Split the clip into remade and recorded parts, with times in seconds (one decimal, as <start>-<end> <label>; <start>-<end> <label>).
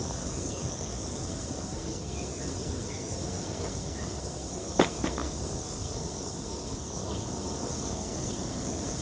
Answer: 0.0-9.0 remade